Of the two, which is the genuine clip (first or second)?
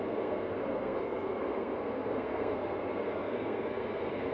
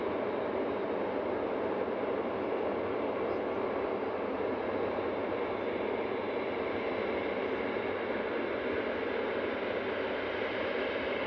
second